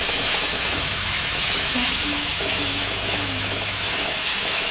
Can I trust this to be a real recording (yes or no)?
no